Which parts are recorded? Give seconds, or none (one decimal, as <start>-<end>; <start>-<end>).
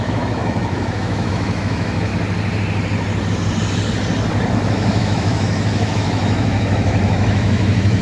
2.1-4.5